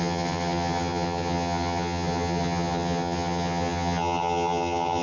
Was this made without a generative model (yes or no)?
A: no